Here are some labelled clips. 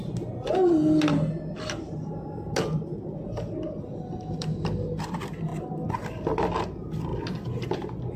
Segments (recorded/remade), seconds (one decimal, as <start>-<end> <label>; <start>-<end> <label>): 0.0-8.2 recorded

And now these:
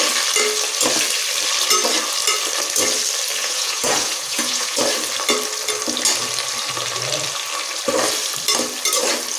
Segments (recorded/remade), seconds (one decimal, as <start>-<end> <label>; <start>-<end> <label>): 0.0-3.4 recorded; 3.4-4.8 remade; 4.8-9.4 recorded

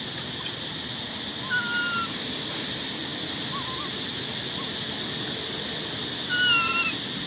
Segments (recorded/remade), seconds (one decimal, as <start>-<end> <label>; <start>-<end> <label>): 0.0-7.3 recorded

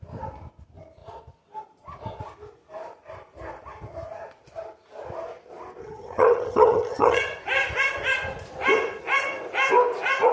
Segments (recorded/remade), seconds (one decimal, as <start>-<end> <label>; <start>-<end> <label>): 0.0-5.8 recorded; 5.8-7.2 remade; 7.2-10.3 recorded

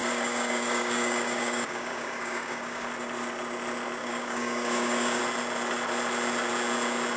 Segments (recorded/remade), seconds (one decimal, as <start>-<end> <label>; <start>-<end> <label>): 0.0-2.9 remade; 2.9-4.0 recorded; 4.0-5.2 remade; 5.2-7.2 recorded

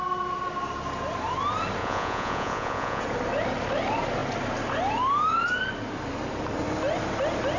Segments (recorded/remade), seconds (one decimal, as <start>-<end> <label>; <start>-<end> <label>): 0.0-1.8 recorded; 1.8-3.0 remade; 3.0-7.6 recorded

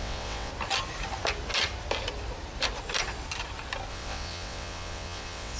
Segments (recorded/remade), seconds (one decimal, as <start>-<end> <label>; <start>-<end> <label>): 0.0-0.5 remade; 0.5-3.9 recorded; 3.9-5.6 remade

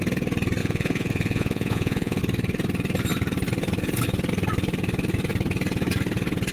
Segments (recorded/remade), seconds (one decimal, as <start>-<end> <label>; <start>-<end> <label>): 0.0-0.6 recorded; 0.6-2.2 remade; 2.2-6.5 recorded